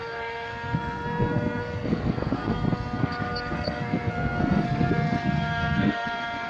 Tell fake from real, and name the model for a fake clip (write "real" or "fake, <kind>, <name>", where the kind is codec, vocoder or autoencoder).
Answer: fake, codec, SNAC